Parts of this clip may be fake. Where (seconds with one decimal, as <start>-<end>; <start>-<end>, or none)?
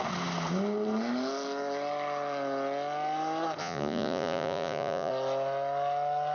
3.6-5.1